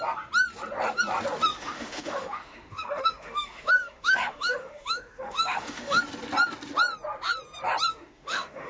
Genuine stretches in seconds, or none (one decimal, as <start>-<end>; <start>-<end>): 0.0-1.5; 6.0-7.9